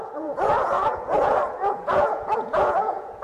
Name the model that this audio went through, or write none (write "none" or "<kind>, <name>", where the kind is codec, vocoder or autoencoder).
vocoder, Vocos